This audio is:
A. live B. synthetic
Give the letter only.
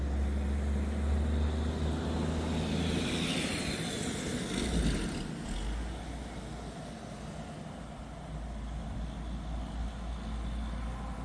A